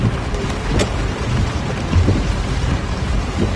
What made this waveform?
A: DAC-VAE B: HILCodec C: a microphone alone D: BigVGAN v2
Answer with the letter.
D